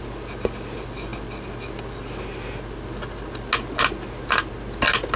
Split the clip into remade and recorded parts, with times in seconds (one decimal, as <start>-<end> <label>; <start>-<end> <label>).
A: 0.0-5.2 recorded